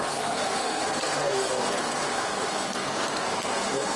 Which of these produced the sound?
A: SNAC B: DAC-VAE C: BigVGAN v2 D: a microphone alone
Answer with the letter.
A